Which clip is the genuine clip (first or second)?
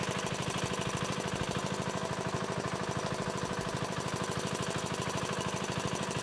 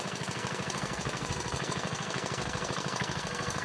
first